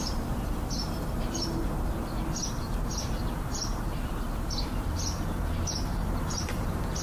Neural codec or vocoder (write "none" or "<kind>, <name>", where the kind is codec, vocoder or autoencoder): vocoder, BigVGAN v2